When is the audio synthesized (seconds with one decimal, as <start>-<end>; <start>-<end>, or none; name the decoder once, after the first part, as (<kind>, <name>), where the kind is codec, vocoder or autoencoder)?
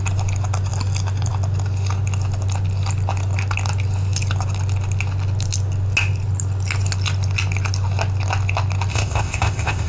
8.9-9.9 (codec, ZipCodec)